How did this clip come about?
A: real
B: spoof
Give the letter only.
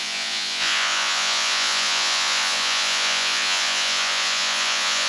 B